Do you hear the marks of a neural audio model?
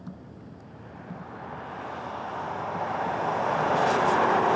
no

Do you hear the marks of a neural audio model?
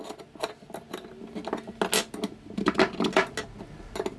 no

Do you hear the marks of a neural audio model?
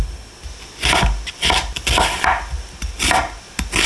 no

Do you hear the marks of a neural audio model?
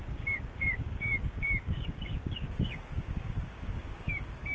yes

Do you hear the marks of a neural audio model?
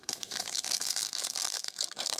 yes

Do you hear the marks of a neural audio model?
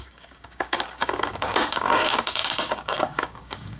yes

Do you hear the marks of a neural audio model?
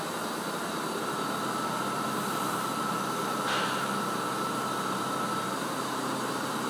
yes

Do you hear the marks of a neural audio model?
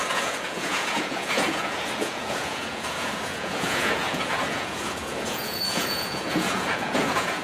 yes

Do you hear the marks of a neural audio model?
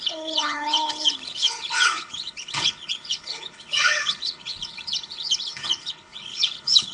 yes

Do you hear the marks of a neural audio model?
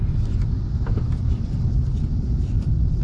no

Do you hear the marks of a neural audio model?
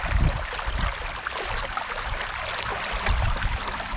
no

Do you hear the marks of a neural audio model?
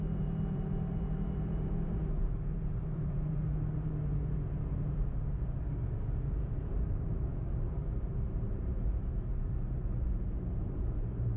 yes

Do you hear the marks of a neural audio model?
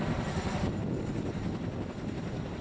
no